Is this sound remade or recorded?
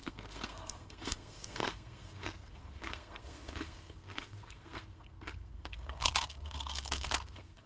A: remade